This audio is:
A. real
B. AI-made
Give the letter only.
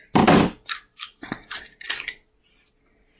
A